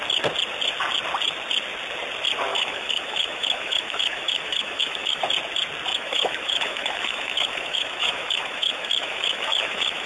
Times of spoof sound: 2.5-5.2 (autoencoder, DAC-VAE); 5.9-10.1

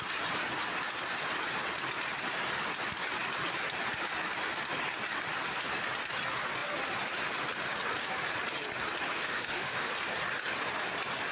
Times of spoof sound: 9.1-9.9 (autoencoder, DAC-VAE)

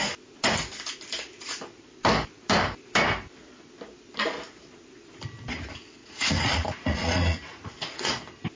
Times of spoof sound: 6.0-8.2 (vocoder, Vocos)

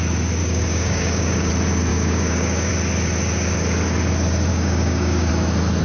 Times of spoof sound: 0.4-1.5 (codec, DAC); 1.9-2.7; 4.5-5.3

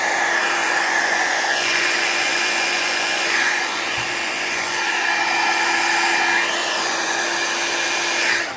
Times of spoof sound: 0.6-5.1 (vocoder, Vocos); 6.6-7.2

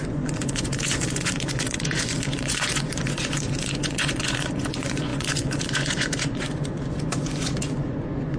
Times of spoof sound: 0.0-8.4 (vocoder, Vocos)

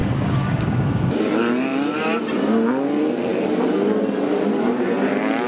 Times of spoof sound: 0.0-1.2 (codec, DAC)

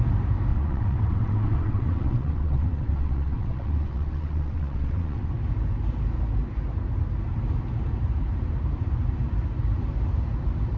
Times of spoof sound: 0.5-5.3 (vocoder, WaveNeXt)